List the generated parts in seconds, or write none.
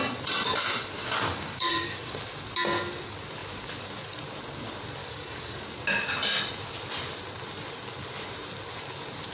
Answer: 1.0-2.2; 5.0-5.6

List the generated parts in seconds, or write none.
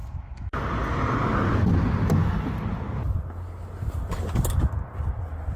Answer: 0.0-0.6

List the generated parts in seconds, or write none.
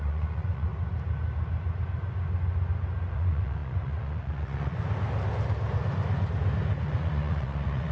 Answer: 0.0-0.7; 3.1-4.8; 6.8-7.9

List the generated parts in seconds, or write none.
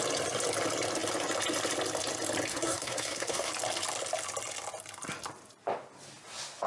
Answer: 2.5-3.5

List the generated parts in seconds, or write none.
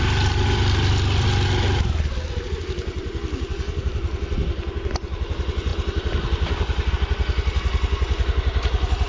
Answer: none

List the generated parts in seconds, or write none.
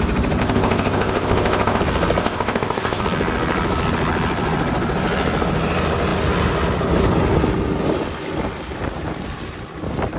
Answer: 0.4-1.8; 2.2-3.0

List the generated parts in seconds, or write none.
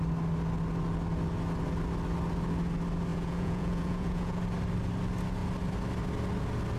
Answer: 3.1-4.4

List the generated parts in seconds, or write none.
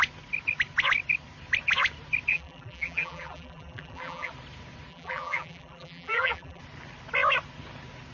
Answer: 2.3-4.3; 4.9-6.6